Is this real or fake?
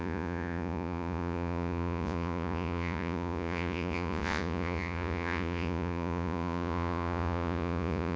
fake